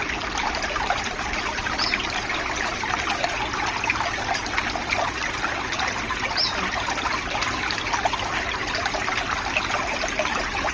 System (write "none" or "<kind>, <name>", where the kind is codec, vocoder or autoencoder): none